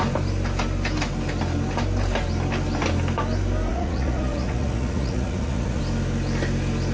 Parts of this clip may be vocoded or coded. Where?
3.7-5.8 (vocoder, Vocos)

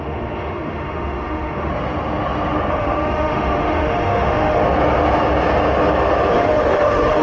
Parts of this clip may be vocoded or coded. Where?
0.0-1.7 (autoencoder, DAC-VAE); 2.7-4.6; 6.3-7.2

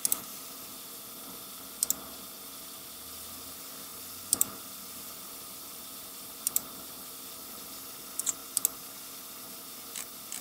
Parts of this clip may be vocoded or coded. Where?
3.9-7.3 (vocoder, BigVGAN v2)

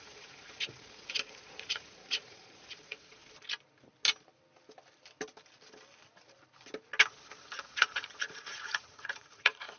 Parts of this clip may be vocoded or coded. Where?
0.0-3.2 (vocoder, Vocos); 7.4-9.8

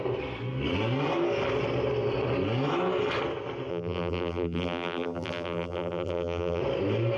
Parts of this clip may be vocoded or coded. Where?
3.7-6.6 (vocoder, BigVGAN v2)

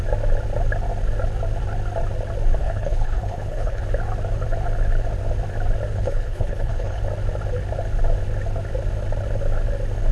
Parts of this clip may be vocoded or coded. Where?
2.6-3.8 (codec, HILCodec); 5.9-7.0

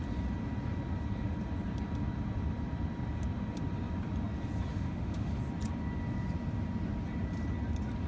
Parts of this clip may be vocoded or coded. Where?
4.7-5.3 (autoencoder, DAC-VAE)

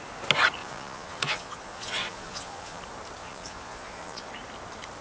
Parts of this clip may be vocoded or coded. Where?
0.6-2.8 (vocoder, Vocos); 3.2-4.3